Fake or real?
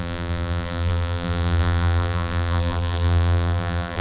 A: fake